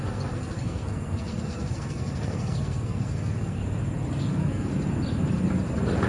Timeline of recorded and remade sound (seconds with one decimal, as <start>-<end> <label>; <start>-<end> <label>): 0.0-3.6 remade; 3.6-4.2 recorded; 4.2-4.7 remade; 4.7-6.1 recorded